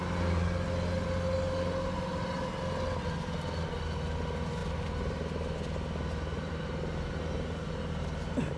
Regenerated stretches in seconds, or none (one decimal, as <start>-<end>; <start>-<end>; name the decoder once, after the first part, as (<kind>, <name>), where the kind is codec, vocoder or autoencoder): none